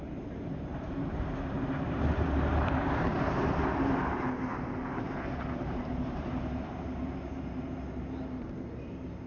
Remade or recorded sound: remade